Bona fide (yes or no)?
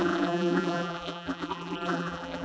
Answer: no